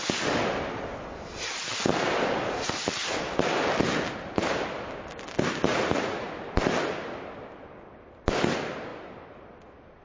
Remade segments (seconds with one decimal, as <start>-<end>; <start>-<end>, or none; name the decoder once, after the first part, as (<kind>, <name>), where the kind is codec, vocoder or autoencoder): 5.7-6.3 (vocoder, Vocos)